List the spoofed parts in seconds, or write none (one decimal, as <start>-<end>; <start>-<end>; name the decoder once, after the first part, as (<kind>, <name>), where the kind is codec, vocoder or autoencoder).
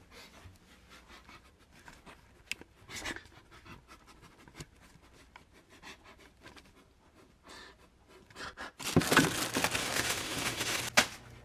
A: 9.8-10.8 (autoencoder, DAC-VAE)